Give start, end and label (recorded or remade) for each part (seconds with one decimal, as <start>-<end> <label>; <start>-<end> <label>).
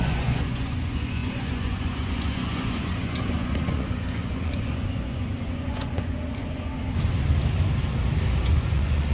0.0-6.7 remade; 6.7-8.4 recorded; 8.4-9.1 remade